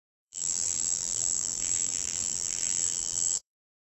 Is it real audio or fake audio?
fake